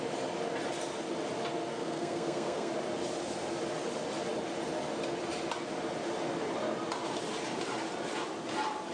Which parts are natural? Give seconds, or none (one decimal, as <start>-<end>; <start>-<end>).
0.0-1.7; 2.7-8.9